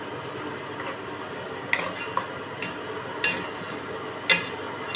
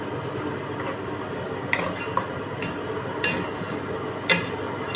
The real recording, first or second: first